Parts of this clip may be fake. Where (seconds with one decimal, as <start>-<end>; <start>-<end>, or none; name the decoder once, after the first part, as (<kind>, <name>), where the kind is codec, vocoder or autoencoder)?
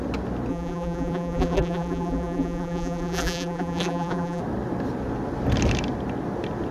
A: 0.5-4.4 (vocoder, BigVGAN v2)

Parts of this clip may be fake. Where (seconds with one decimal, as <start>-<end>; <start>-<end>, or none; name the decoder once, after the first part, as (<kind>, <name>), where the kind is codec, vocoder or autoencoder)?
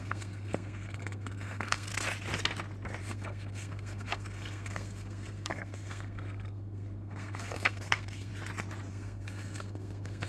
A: 0.0-1.9 (codec, SNAC); 3.0-8.3; 8.9-10.3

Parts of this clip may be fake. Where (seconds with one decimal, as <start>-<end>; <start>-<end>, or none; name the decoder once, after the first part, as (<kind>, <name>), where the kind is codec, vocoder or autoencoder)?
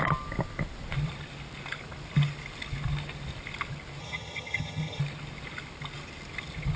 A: 4.0-5.0 (vocoder, HiFi-GAN)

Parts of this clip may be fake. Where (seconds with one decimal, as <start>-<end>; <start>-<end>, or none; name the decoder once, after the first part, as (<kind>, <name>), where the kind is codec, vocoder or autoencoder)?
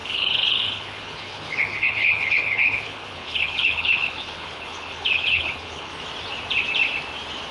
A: 0.0-5.9 (codec, HILCodec)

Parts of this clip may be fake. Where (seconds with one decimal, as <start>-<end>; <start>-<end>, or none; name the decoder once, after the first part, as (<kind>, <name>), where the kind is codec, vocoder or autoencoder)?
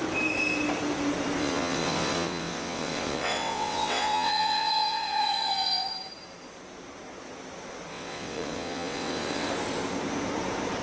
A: 1.4-5.9 (vocoder, WaveNeXt); 7.9-9.5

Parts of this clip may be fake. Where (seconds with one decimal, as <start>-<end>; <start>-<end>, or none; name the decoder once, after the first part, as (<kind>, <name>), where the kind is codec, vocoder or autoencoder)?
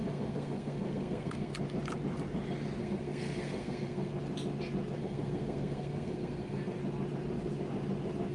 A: 0.0-1.5 (codec, SNAC); 2.8-4.1; 5.0-6.8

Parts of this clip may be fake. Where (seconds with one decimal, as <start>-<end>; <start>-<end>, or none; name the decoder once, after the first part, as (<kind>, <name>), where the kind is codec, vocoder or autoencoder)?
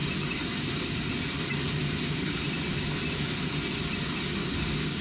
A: 4.4-5.0 (codec, DAC)